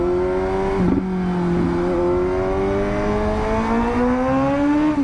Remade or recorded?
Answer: recorded